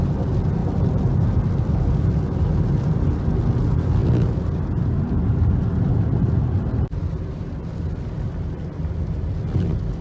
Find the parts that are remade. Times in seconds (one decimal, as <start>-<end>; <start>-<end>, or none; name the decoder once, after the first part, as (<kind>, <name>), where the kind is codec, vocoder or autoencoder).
none